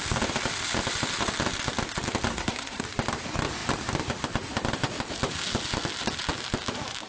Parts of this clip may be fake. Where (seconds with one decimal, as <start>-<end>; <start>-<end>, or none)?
2.3-2.8